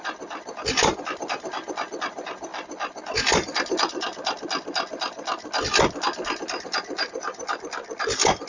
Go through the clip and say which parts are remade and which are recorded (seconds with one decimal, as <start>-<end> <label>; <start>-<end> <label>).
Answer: 0.0-8.5 recorded